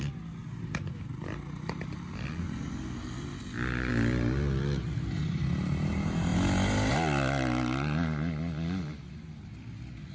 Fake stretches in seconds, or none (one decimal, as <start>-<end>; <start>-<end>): none